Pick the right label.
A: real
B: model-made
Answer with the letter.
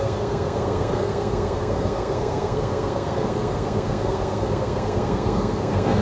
B